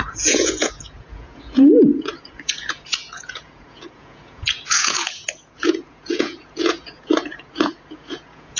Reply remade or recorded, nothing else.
remade